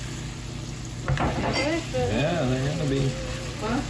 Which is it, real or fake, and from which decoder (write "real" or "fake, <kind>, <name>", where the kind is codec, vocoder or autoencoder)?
real